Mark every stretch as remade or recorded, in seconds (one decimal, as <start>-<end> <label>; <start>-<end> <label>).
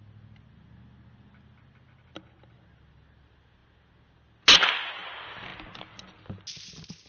0.0-7.1 recorded